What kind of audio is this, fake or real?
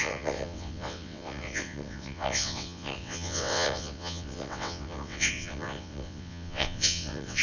fake